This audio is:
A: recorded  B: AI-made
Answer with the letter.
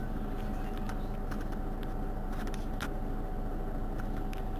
A